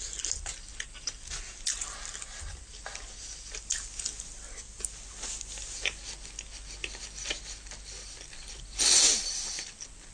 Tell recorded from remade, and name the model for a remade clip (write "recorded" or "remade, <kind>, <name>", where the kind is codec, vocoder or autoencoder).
recorded